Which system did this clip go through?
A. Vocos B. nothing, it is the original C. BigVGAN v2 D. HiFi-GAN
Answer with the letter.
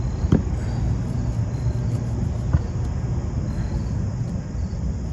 B